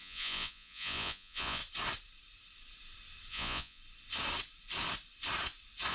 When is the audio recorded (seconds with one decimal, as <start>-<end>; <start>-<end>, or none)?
1.6-3.3; 3.8-5.9